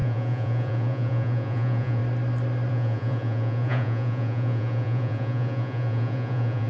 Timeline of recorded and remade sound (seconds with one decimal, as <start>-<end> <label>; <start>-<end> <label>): 0.0-2.0 remade; 2.0-2.7 recorded; 2.7-6.7 remade

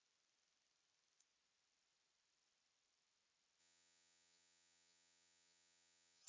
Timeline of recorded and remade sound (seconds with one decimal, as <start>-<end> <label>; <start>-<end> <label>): 0.0-3.6 recorded; 3.6-6.3 remade

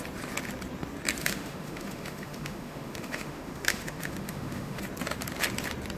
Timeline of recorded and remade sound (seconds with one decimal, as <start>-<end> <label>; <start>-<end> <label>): 0.0-1.2 recorded; 1.2-4.8 remade; 4.8-6.0 recorded

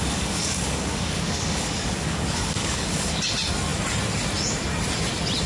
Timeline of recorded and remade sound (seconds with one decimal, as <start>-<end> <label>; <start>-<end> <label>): 0.0-3.2 remade; 3.2-5.5 recorded

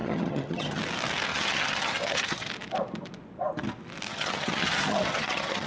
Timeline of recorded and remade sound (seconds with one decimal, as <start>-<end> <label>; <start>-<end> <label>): 0.0-0.8 remade; 0.8-1.3 recorded; 1.3-2.5 remade; 2.5-4.1 recorded; 4.1-5.7 remade

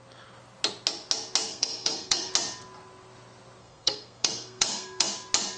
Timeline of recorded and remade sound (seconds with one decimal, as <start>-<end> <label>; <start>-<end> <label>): 0.0-1.5 recorded; 1.5-2.3 remade; 2.3-3.6 recorded; 3.6-5.1 remade; 5.1-5.6 recorded

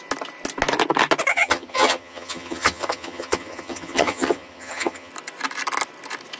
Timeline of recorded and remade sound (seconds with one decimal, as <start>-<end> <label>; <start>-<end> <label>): 0.0-1.3 recorded; 1.3-5.1 remade; 5.1-6.4 recorded

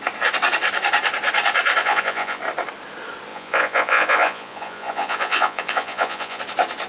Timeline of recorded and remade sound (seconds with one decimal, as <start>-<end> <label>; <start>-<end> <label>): 0.0-1.8 recorded; 1.8-2.4 remade; 2.4-3.3 recorded; 3.3-6.4 remade; 6.4-6.9 recorded